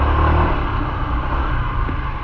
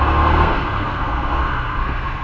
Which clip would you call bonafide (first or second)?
first